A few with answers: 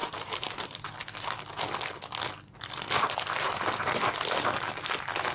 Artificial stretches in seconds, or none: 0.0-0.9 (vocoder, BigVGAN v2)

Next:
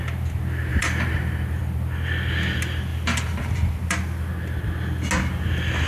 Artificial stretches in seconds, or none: 0.7-1.6 (vocoder, BigVGAN v2); 2.9-4.3

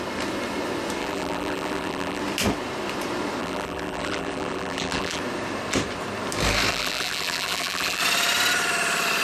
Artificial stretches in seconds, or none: 1.0-2.2 (vocoder, BigVGAN v2); 3.4-5.2; 6.7-8.0

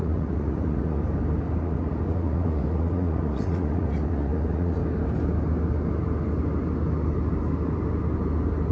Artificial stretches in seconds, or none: 0.0-1.0 (vocoder, Vocos); 1.6-4.8

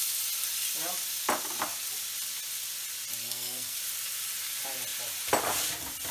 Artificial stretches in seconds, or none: 3.2-3.8 (codec, SNAC)

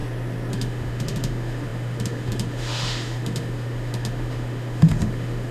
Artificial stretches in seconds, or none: 0.5-5.5 (autoencoder, DAC-VAE)

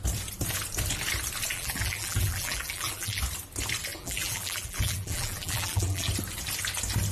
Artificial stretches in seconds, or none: 1.5-3.2 (vocoder, BigVGAN v2); 3.9-6.1

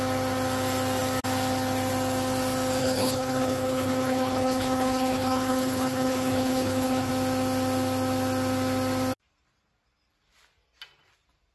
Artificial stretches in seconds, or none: 2.8-7.1 (codec, HILCodec)